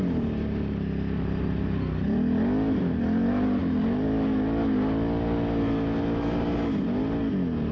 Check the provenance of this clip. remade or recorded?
recorded